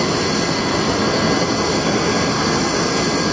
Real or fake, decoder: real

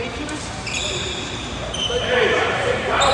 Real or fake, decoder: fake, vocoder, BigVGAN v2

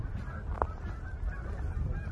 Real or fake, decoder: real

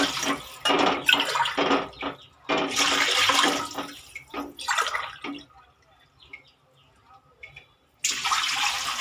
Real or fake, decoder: real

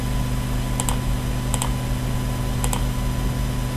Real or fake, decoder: real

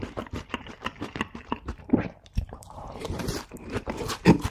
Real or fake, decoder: fake, vocoder, BigVGAN v2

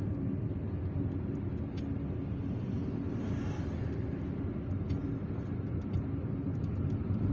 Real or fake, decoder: real